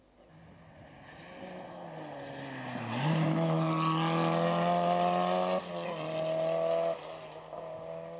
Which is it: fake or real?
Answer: real